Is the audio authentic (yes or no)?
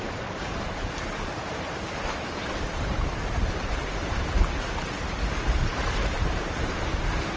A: no